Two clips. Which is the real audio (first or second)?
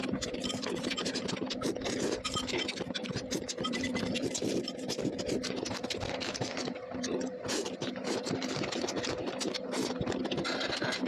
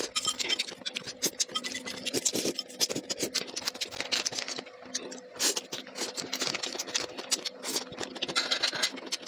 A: second